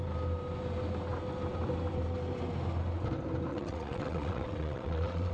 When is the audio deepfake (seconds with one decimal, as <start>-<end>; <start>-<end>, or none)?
3.5-5.3